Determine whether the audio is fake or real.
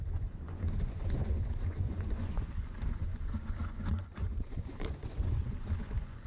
fake